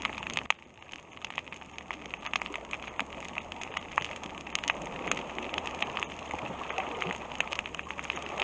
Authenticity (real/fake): real